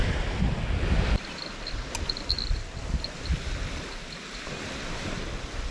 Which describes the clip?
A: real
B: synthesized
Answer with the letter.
A